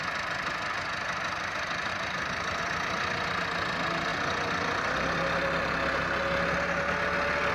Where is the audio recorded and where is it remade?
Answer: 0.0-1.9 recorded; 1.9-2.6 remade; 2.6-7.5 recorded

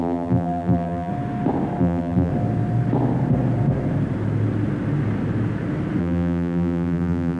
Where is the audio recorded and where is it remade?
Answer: 0.0-1.1 remade; 1.1-1.8 recorded; 1.8-2.3 remade; 2.3-6.0 recorded; 6.0-7.4 remade

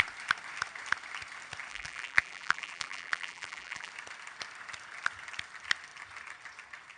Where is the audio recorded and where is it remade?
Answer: 0.0-1.7 recorded; 1.7-3.9 remade; 3.9-7.0 recorded

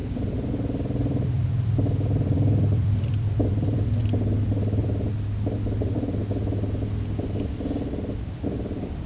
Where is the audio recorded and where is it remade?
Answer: 0.0-6.2 remade; 6.2-7.2 recorded; 7.2-9.1 remade

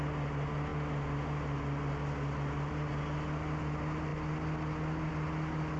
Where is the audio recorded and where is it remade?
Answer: 0.0-5.8 recorded